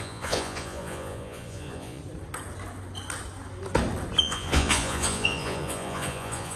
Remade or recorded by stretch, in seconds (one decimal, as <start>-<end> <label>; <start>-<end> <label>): 0.0-2.0 remade; 2.0-4.2 recorded; 4.2-6.6 remade